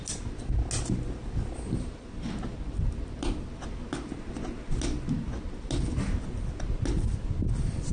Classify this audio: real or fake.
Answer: real